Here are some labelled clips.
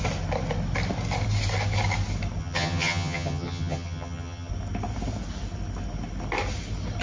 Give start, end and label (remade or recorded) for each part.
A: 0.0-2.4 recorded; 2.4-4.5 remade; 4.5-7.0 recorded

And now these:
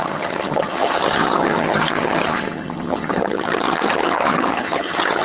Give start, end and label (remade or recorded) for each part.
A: 0.0-5.2 remade

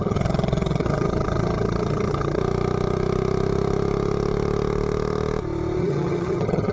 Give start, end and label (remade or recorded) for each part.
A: 0.0-2.4 remade; 2.4-5.8 recorded; 5.8-6.7 remade

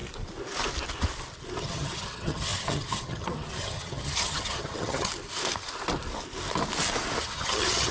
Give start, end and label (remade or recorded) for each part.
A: 0.0-1.6 recorded; 1.6-5.1 remade; 5.1-7.2 recorded; 7.2-7.9 remade

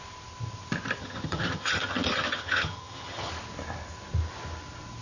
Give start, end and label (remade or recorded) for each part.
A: 0.0-1.0 recorded; 1.0-3.3 remade; 3.3-5.0 recorded

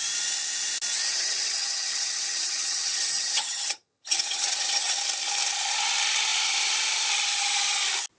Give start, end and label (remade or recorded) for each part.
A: 0.0-1.1 recorded; 1.1-5.0 remade; 5.0-8.2 recorded

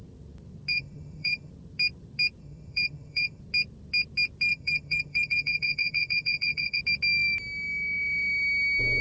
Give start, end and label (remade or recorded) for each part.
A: 0.0-0.7 recorded; 0.7-1.5 remade; 1.5-2.4 recorded; 2.4-3.4 remade; 3.4-4.5 recorded; 4.5-6.8 remade; 6.8-9.0 recorded

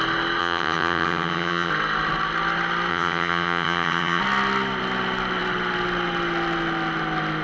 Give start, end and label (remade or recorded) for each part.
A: 0.0-0.4 recorded; 0.4-1.7 remade; 1.7-2.9 recorded; 2.9-4.2 remade; 4.2-7.4 recorded